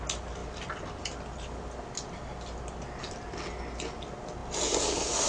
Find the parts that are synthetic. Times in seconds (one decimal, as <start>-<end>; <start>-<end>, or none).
none